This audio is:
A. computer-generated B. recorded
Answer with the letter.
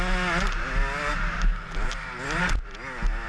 B